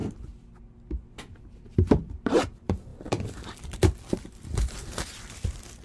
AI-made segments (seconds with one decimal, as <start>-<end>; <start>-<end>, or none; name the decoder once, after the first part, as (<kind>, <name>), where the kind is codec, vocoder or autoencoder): 1.7-5.8 (vocoder, BigVGAN v2)